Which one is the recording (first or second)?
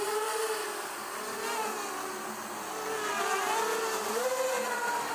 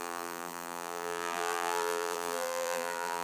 first